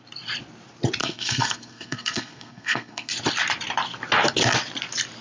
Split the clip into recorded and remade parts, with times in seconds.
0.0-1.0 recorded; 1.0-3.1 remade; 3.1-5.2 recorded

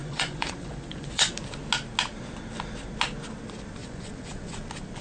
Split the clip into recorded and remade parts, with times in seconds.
0.0-1.3 remade; 1.3-3.8 recorded; 3.8-4.6 remade; 4.6-5.0 recorded